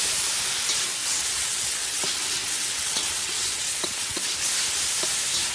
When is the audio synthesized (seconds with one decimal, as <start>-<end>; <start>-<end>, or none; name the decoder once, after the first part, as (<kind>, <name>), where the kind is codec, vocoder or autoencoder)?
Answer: 1.0-4.3 (vocoder, WaveNeXt)